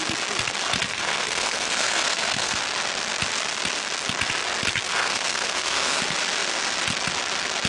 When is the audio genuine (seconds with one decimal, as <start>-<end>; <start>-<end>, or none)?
0.0-0.9; 2.6-4.9; 6.0-7.7